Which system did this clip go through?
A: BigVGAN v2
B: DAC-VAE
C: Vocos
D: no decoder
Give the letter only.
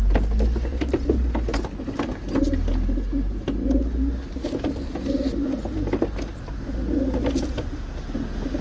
D